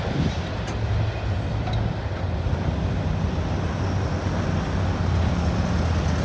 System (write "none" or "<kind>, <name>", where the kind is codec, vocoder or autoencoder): none